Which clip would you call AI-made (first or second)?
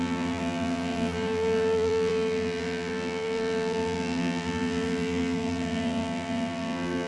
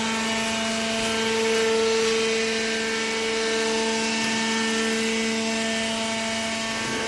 first